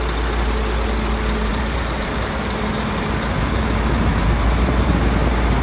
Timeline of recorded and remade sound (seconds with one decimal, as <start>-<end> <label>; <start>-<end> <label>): 0.0-1.5 recorded; 1.5-4.9 remade; 4.9-5.6 recorded